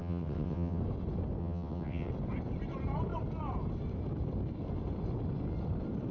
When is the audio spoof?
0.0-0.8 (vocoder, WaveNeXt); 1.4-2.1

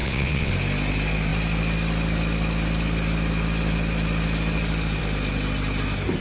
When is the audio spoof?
0.0-0.5 (vocoder, WaveNeXt)

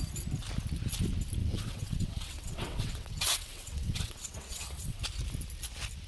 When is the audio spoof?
1.4-5.0 (vocoder, WaveNeXt)

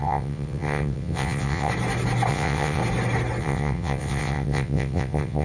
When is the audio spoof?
0.0-1.7 (vocoder, WaveNeXt); 2.3-2.8; 3.4-5.4

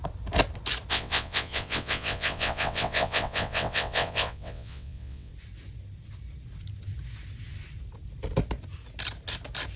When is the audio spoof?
0.9-5.3 (vocoder, WaveNeXt)